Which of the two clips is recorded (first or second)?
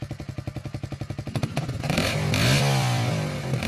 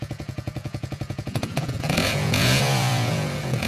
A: first